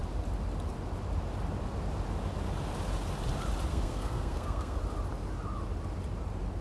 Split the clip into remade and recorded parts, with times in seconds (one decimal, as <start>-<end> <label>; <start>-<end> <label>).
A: 0.0-3.7 recorded; 3.7-4.8 remade; 4.8-6.6 recorded